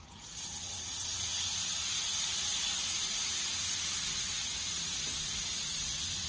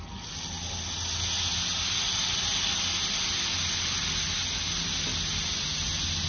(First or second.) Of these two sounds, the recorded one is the second